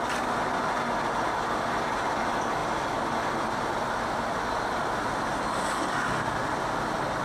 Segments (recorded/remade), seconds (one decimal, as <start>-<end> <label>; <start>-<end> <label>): 0.0-7.2 recorded